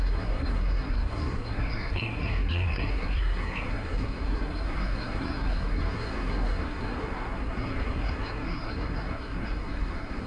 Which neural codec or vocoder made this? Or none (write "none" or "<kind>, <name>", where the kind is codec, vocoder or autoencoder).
codec, SNAC